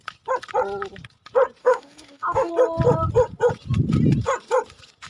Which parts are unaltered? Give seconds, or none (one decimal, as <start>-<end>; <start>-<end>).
0.0-1.6; 2.5-5.1